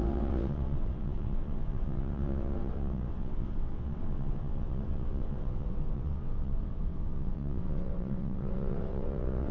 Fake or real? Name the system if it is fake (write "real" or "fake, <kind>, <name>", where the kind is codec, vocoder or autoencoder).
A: fake, vocoder, WaveNeXt